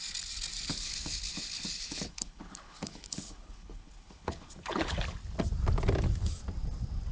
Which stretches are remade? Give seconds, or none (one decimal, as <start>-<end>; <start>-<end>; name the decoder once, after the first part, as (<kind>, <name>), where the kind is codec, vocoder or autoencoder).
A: 0.7-5.0 (codec, HILCodec)